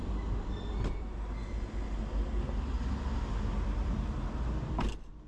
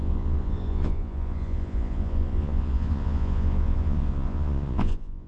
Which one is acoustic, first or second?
first